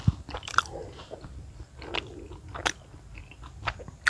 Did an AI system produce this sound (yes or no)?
no